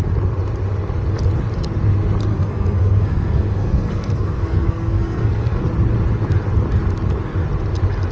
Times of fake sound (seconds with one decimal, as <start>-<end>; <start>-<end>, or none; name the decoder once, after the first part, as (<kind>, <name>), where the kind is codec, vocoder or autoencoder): 2.3-5.6 (codec, SNAC)